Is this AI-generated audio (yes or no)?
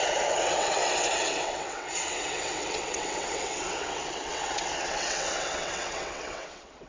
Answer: yes